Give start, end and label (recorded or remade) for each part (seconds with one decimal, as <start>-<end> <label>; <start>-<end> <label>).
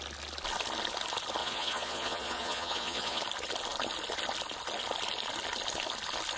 0.0-1.4 recorded; 1.4-3.2 remade; 3.2-6.4 recorded